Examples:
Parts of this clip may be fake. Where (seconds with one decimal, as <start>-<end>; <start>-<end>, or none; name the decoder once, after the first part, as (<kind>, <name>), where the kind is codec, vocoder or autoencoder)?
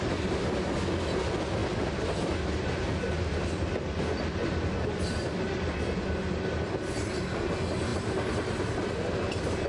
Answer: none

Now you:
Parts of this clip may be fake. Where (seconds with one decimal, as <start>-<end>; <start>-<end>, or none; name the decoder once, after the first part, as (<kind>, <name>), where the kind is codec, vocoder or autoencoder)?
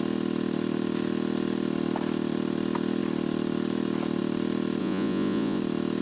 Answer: 4.8-5.6 (vocoder, Vocos)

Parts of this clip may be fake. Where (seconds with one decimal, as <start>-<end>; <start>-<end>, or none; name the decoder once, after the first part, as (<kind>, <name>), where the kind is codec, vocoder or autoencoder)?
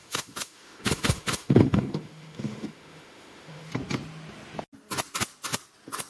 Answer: 0.0-3.7 (autoencoder, DAC-VAE)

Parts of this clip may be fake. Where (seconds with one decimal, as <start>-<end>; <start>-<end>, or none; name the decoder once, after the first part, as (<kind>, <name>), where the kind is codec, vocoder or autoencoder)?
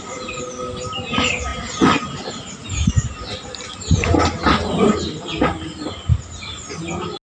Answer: none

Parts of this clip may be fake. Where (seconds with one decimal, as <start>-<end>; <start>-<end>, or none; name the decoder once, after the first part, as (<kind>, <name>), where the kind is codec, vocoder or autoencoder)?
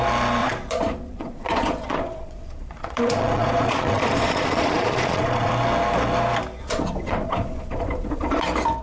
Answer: 0.4-5.5 (vocoder, Vocos); 6.6-8.4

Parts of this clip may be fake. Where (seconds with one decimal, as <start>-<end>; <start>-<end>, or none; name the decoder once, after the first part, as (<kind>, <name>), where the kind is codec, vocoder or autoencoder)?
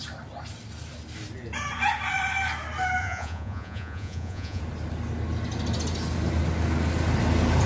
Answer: 3.0-4.6 (vocoder, Vocos)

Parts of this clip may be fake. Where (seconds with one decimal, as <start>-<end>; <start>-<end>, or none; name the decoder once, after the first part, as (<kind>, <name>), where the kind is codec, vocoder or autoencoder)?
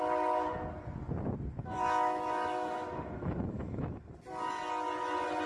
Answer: 1.6-4.1 (autoencoder, DAC-VAE)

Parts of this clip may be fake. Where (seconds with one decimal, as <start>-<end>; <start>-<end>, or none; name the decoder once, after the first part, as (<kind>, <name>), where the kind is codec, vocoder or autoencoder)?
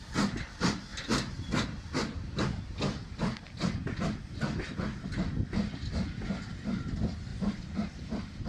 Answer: 7.3-8.5 (vocoder, BigVGAN v2)